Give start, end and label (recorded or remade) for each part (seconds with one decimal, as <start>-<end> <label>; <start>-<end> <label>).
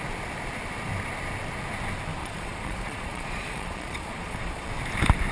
0.0-2.2 recorded; 2.2-4.7 remade; 4.7-5.3 recorded